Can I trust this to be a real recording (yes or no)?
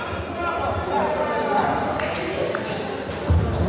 yes